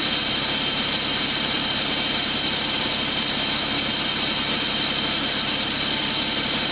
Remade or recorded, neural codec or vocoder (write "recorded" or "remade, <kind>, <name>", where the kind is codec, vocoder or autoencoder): recorded